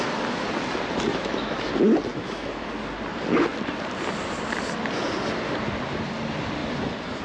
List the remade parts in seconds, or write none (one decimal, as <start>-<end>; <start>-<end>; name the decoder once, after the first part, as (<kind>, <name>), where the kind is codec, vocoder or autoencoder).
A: 1.1-1.7 (autoencoder, DAC-VAE); 2.1-2.7